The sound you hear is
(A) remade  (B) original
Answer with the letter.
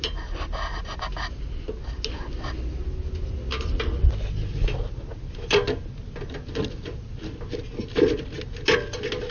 B